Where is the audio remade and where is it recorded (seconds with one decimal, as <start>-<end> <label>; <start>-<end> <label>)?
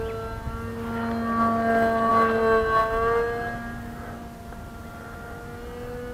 0.0-6.1 recorded